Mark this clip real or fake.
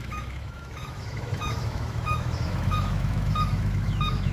fake